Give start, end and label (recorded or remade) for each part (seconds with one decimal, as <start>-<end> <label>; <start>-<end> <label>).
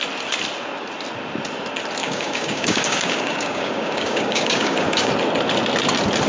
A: 0.0-2.0 recorded; 2.0-5.1 remade; 5.1-6.3 recorded